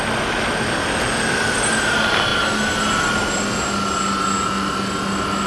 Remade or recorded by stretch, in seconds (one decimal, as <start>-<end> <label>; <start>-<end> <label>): 0.0-5.5 recorded

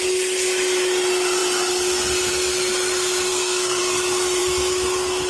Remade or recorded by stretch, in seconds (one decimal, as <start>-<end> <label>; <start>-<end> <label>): 0.0-3.3 recorded; 3.3-3.8 remade; 3.8-5.3 recorded

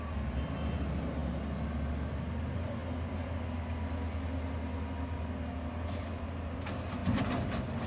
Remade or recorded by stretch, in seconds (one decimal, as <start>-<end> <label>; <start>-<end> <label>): 0.0-7.9 recorded

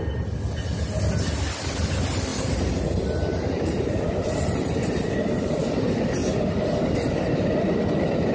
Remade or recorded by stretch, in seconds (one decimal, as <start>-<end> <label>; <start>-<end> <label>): 0.0-8.3 recorded

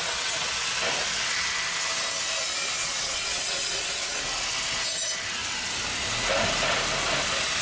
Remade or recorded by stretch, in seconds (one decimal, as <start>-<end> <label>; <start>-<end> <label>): 0.0-0.5 remade; 0.5-2.8 recorded; 2.8-4.2 remade; 4.2-7.6 recorded

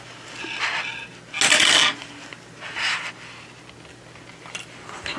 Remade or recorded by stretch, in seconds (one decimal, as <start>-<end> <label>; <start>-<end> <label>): 0.0-5.2 recorded

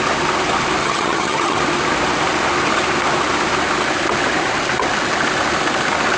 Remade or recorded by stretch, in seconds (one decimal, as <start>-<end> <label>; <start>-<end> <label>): 0.0-0.8 recorded; 0.8-1.6 remade; 1.6-6.2 recorded